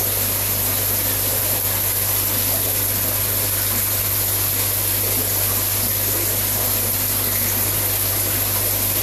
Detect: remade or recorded recorded